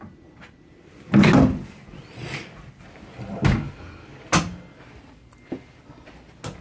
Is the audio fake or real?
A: real